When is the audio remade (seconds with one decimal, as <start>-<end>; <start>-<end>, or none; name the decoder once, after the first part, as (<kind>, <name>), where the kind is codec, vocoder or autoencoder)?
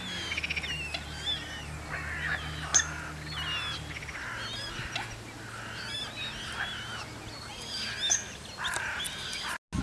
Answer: none